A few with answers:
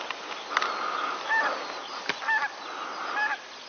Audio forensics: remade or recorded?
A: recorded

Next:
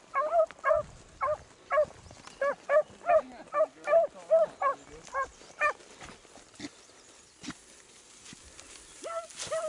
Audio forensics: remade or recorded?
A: recorded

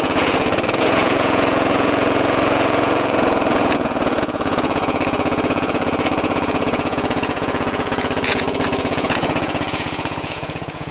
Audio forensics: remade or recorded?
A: remade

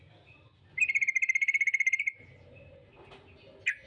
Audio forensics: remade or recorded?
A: recorded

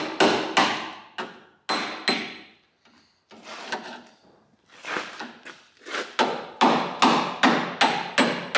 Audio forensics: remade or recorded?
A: recorded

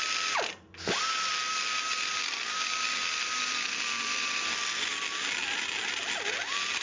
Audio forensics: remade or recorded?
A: recorded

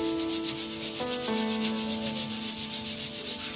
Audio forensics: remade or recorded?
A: recorded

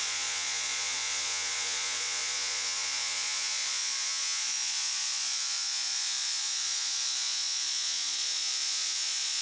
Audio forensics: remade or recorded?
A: remade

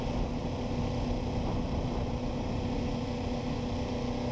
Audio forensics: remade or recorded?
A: recorded